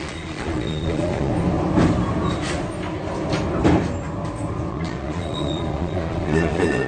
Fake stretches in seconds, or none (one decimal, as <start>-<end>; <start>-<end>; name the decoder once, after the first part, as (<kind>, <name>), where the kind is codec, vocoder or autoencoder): 0.0-1.3 (vocoder, Vocos); 4.7-6.9